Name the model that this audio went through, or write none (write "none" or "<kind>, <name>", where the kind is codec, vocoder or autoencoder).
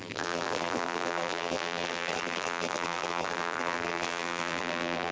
vocoder, BigVGAN v2